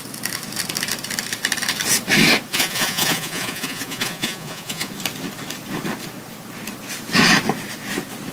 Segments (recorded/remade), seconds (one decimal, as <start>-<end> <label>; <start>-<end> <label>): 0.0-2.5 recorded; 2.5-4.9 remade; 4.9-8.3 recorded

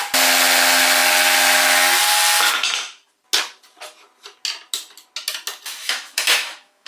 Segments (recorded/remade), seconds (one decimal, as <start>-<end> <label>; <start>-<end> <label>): 0.0-5.8 recorded; 5.8-6.9 remade

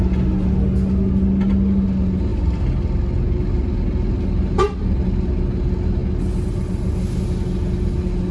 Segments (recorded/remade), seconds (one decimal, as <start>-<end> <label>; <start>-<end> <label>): 0.0-8.3 recorded